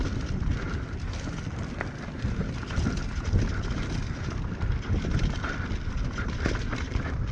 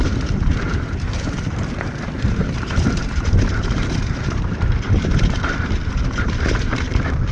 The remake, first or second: second